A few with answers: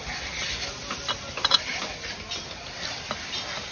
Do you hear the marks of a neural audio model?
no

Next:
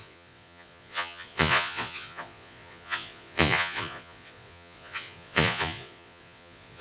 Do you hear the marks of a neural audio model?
yes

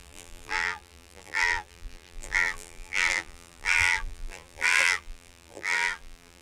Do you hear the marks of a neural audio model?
yes